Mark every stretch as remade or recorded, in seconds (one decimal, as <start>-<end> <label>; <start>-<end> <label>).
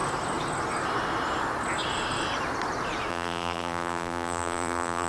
0.0-3.1 recorded; 3.1-5.1 remade